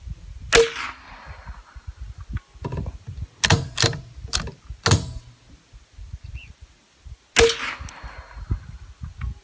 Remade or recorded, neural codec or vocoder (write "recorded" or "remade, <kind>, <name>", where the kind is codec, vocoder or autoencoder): recorded